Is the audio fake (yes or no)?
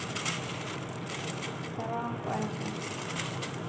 no